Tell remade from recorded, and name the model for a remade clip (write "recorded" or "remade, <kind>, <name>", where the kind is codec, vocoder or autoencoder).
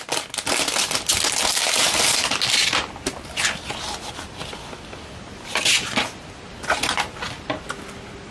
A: recorded